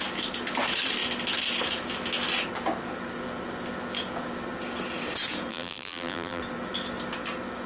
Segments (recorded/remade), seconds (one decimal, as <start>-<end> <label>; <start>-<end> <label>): 0.0-5.5 recorded; 5.5-6.4 remade; 6.4-7.7 recorded